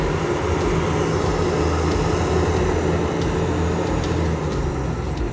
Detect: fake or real real